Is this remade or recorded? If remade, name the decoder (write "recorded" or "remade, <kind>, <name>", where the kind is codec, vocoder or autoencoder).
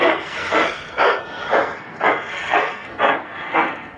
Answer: remade, codec, SNAC